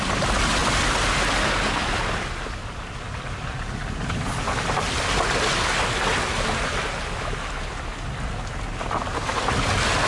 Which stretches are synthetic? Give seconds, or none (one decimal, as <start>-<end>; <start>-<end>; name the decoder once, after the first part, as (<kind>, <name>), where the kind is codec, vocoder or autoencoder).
none